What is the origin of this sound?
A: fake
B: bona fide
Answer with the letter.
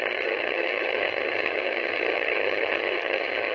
A